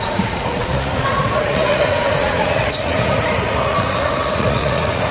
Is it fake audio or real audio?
fake